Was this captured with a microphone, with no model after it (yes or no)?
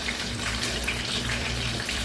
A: no